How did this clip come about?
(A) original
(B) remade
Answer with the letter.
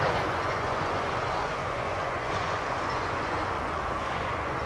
B